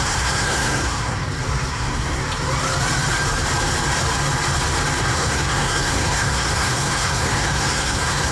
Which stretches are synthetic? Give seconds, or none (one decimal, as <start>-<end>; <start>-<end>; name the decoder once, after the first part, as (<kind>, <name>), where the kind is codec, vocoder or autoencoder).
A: 0.0-1.2 (codec, SNAC); 1.7-2.2; 5.0-8.3